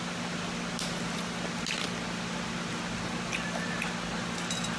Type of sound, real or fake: real